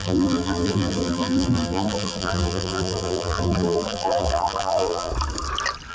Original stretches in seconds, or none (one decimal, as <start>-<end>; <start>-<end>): 5.1-5.9